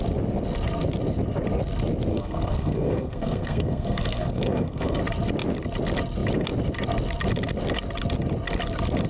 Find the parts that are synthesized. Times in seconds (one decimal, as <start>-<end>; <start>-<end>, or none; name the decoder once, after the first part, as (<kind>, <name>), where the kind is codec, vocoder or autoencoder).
2.1-5.0 (codec, SNAC)